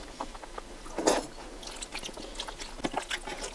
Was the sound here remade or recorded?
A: recorded